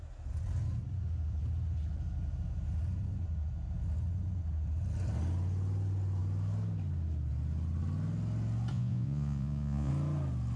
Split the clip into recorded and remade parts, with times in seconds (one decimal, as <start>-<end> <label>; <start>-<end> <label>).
0.0-8.7 recorded; 8.7-9.9 remade; 9.9-10.6 recorded